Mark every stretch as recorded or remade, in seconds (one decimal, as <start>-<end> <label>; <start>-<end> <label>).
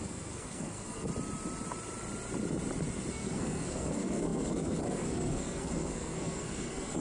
0.0-1.1 remade; 1.1-3.1 recorded; 3.1-7.0 remade